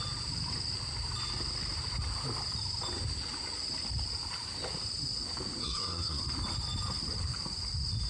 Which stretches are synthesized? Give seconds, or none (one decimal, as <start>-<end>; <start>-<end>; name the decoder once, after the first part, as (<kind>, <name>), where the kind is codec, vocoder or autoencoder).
5.6-6.2 (codec, SNAC)